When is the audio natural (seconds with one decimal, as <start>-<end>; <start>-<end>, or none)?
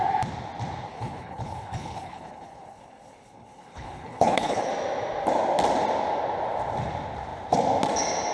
0.0-0.9; 4.7-8.3